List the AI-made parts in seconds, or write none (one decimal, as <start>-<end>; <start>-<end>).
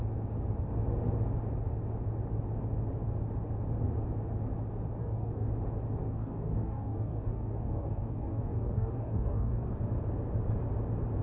5.0-5.5; 6.0-9.8